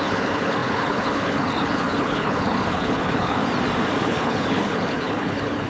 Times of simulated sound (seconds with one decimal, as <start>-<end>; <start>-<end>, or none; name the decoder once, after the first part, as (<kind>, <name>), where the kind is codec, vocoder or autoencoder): 0.0-3.4 (codec, HILCodec); 4.0-5.7